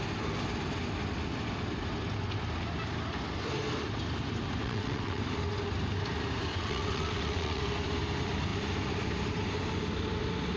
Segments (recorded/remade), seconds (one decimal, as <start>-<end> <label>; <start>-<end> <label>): 0.0-4.6 recorded; 4.6-5.2 remade; 5.2-6.5 recorded; 6.5-7.6 remade; 7.6-10.6 recorded